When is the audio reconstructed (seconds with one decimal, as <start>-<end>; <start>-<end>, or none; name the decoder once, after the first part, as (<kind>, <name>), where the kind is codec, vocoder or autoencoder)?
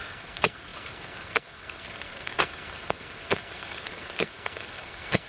0.0-5.3 (codec, SNAC)